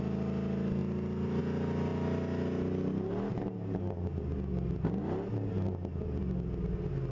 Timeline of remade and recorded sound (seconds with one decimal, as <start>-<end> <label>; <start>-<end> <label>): 0.0-7.1 recorded

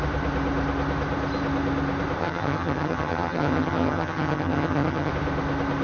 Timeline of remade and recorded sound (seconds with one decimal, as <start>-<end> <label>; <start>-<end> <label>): 0.0-2.2 recorded; 2.2-5.1 remade; 5.1-5.8 recorded

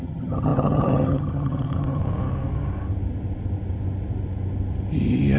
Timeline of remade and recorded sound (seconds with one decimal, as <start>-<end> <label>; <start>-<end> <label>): 0.0-2.0 remade; 2.0-5.4 recorded

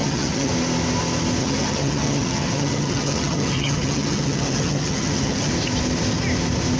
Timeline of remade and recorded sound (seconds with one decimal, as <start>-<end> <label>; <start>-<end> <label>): 0.0-0.5 remade; 0.5-1.4 recorded; 1.4-5.5 remade; 5.5-6.8 recorded

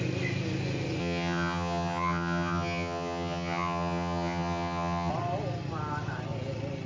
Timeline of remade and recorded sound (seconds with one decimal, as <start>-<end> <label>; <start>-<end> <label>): 0.0-1.0 recorded; 1.0-5.1 remade; 5.1-6.9 recorded